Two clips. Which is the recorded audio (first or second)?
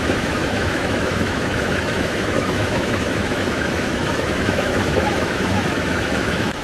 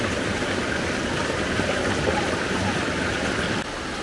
second